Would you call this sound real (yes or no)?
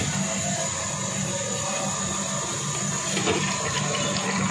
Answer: yes